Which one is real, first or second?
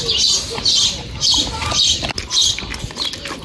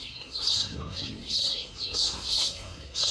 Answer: first